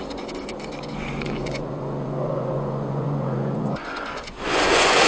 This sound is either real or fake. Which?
fake